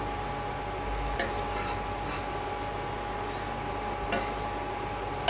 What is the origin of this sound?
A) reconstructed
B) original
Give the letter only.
B